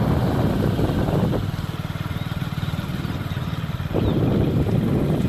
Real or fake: real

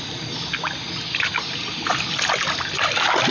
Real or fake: real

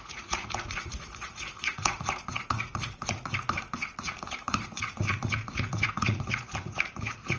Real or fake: fake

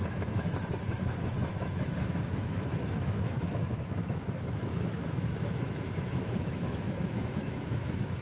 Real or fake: fake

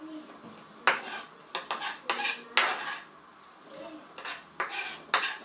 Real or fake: real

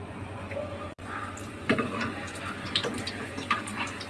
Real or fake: fake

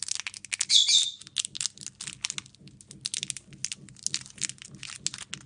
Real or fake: real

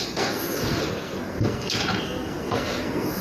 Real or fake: fake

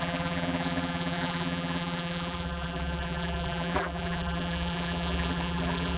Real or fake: fake